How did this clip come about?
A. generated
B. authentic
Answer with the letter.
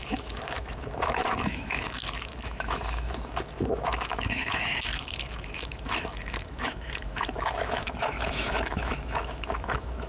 A